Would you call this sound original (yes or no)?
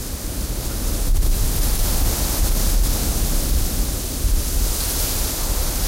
yes